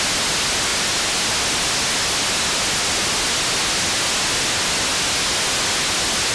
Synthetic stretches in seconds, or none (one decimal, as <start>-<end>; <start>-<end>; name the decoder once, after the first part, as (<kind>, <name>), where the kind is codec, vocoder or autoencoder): none

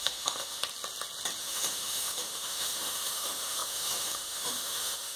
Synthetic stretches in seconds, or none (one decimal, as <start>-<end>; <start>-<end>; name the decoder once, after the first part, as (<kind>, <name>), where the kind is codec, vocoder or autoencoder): 0.0-0.6 (autoencoder, DAC-VAE); 1.4-5.2

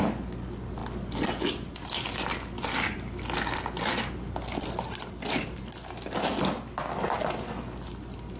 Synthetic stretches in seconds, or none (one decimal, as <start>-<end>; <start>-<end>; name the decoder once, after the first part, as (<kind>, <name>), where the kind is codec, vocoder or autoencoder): none

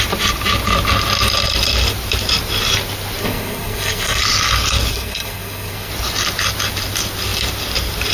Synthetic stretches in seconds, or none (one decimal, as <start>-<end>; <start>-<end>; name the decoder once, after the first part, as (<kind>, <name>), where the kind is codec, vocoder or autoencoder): 3.2-4.2 (codec, SNAC); 4.9-5.9

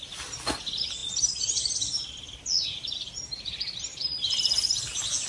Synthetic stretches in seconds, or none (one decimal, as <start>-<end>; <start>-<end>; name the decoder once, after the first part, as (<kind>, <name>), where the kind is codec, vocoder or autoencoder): none

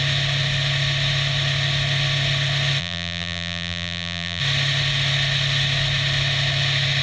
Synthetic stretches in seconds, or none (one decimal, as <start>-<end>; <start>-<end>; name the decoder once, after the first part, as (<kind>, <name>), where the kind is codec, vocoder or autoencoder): 2.8-4.4 (vocoder, BigVGAN v2)

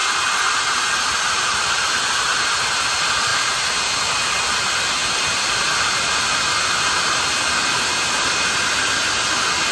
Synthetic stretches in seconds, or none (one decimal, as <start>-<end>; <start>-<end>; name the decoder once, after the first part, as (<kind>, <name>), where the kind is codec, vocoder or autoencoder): none